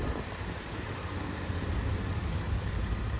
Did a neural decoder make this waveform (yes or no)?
yes